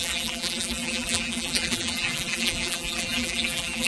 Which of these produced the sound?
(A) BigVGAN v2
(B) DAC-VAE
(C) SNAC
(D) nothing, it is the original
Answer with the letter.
A